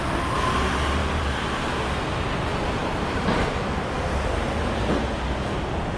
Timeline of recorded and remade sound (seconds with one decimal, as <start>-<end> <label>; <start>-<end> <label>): 0.0-1.0 recorded; 1.0-2.0 remade; 2.0-2.8 recorded; 2.8-3.9 remade; 3.9-6.0 recorded